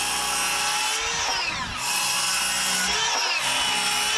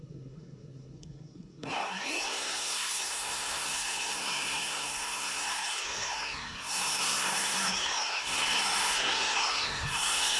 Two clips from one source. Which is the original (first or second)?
first